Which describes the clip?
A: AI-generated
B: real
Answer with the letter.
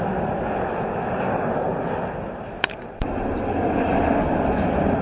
B